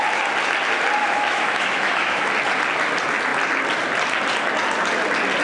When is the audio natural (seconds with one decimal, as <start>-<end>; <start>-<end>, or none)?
0.0-1.0; 2.2-5.4